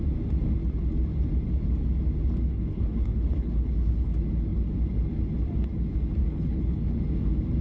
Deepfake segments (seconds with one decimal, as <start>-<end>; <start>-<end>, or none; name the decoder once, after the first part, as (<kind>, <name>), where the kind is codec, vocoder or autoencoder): 2.5-4.1 (codec, HILCodec); 6.2-7.0

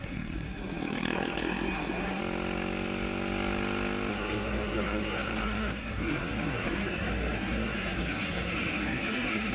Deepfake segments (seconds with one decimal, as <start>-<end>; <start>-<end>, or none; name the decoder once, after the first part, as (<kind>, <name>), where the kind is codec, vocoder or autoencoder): 0.0-2.2 (codec, SNAC); 4.1-9.5

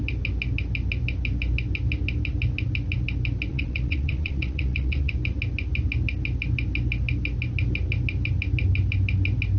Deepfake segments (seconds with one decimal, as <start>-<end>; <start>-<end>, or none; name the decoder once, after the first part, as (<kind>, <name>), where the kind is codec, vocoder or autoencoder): 3.5-5.1 (vocoder, Vocos)

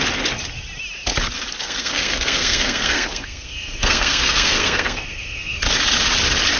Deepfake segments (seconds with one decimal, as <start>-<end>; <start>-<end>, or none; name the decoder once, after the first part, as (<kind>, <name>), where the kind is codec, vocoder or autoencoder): 1.6-5.6 (codec, SNAC)

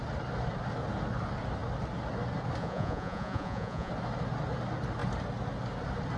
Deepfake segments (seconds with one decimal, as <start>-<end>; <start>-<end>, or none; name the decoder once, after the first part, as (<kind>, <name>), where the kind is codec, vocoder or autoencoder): 2.6-3.9 (vocoder, Vocos)

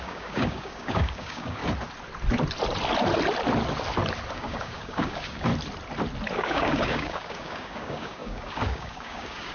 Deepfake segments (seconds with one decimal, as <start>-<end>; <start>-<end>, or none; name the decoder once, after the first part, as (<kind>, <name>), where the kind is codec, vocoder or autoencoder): 0.0-1.6 (codec, DAC); 4.3-5.5; 6.3-9.5